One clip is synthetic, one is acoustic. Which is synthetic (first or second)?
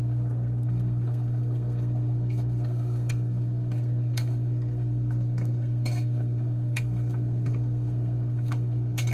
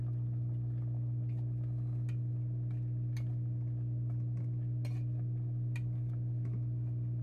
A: first